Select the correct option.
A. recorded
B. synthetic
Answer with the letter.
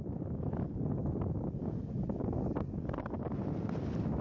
A